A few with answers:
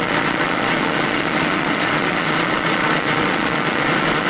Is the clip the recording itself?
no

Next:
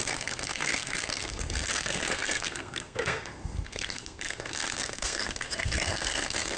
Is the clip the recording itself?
no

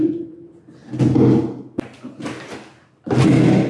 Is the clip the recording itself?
yes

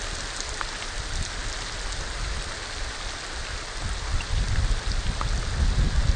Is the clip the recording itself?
yes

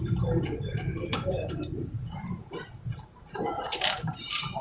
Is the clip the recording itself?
no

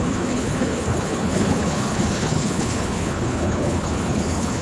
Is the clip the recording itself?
no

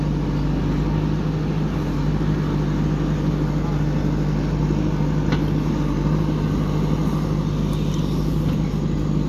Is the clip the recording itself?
yes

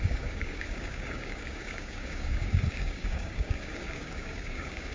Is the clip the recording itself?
no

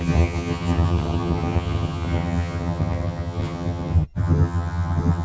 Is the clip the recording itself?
no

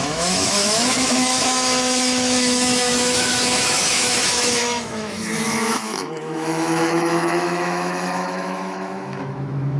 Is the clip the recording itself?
no